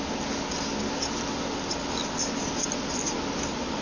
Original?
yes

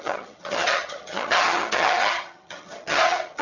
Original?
no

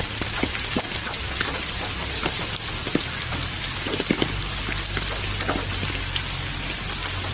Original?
yes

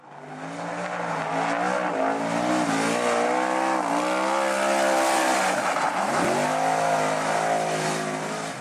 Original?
yes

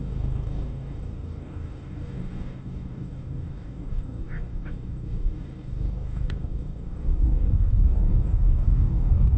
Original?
no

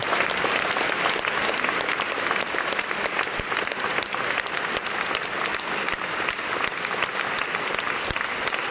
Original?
yes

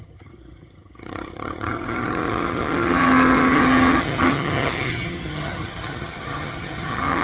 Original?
no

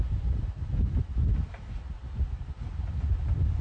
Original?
yes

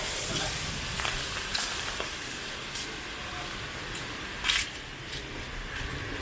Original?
yes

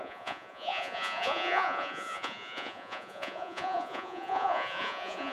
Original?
no